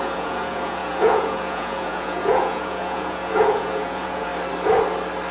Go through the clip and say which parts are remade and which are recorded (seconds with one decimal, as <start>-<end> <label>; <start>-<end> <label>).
0.0-4.3 remade; 4.3-5.3 recorded